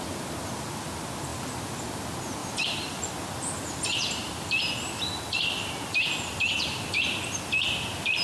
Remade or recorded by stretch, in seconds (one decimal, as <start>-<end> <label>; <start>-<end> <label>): 0.0-2.4 recorded; 2.4-3.1 remade; 3.1-4.2 recorded; 4.2-4.7 remade; 4.7-8.2 recorded